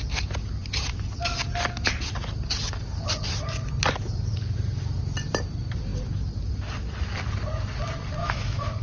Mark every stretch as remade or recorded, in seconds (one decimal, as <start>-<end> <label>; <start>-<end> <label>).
0.0-8.2 recorded; 8.2-8.8 remade